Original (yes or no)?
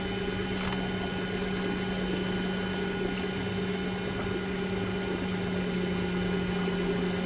yes